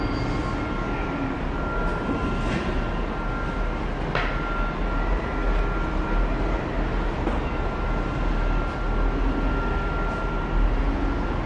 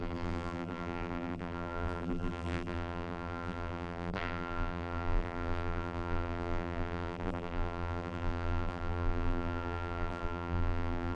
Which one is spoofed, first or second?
second